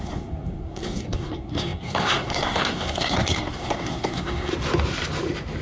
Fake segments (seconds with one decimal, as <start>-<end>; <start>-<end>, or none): 0.0-4.5